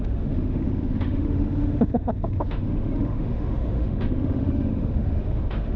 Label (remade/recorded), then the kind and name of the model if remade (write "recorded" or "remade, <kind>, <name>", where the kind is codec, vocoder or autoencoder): remade, autoencoder, DAC-VAE